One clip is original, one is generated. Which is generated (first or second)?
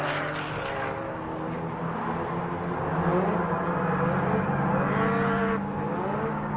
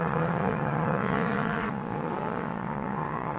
second